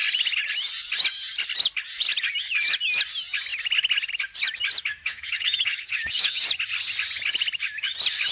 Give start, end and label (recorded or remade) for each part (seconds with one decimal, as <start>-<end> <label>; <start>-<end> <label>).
0.0-4.9 recorded; 4.9-6.4 remade; 6.4-8.3 recorded